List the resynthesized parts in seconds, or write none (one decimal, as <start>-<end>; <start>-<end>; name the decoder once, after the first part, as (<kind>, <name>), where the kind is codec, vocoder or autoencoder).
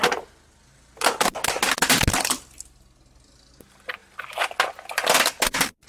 none